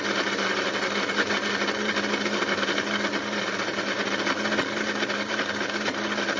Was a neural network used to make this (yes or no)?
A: no